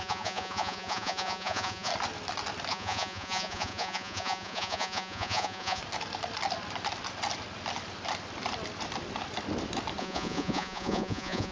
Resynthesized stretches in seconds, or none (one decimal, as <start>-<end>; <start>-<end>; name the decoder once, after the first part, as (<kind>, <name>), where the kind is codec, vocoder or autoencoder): 0.0-1.9 (vocoder, Vocos); 2.7-5.8; 10.0-11.5